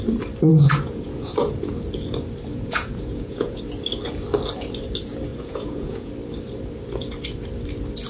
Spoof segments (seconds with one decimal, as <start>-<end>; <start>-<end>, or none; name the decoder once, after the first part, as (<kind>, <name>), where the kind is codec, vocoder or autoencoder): 0.5-1.5 (vocoder, Vocos); 2.5-3.6; 5.3-6.1

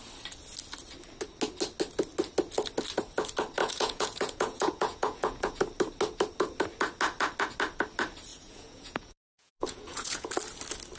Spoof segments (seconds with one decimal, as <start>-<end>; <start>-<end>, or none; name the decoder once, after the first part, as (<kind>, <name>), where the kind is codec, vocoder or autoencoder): 3.6-5.6 (vocoder, Vocos); 8.3-10.3